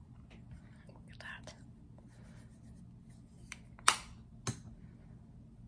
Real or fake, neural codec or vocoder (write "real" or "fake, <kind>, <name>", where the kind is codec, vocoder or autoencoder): real